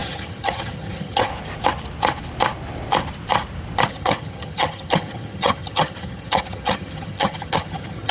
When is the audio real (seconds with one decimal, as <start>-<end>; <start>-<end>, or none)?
1.3-3.9